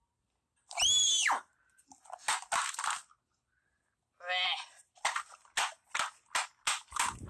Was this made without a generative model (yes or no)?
yes